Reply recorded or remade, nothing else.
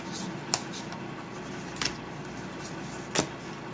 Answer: recorded